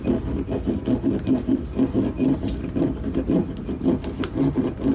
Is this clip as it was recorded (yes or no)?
yes